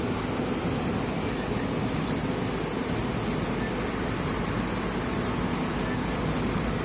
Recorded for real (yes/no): yes